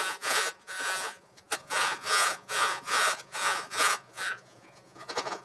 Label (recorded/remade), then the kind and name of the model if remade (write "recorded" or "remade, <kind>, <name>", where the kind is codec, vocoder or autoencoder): remade, vocoder, Vocos